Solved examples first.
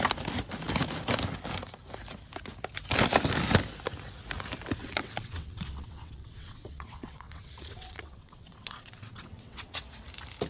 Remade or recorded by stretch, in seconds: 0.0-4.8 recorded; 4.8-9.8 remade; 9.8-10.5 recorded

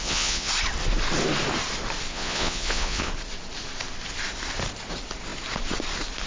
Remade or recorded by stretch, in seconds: 0.0-0.5 remade; 0.5-2.1 recorded; 2.1-3.1 remade; 3.1-6.3 recorded